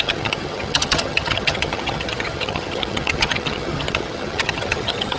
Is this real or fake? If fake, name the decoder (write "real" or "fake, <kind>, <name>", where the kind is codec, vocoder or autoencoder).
fake, vocoder, HiFi-GAN